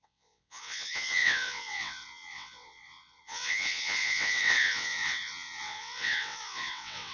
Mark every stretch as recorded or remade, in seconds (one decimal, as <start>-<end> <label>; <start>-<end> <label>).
0.0-7.1 remade